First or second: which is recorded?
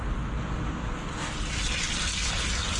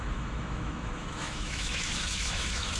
first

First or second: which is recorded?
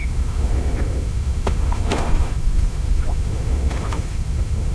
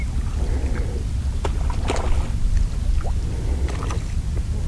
second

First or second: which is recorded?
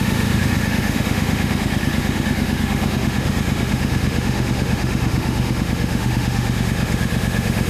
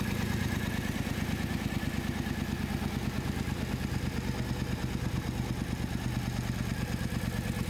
second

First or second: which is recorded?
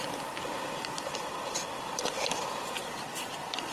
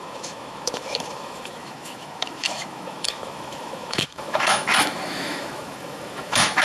first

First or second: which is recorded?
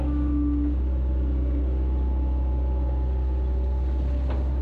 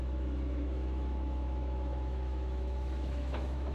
first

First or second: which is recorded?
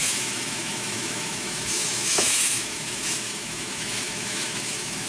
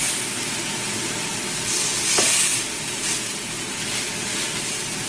second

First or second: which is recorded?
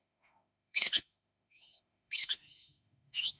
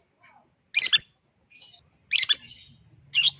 second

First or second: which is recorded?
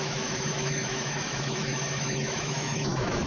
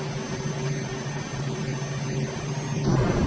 second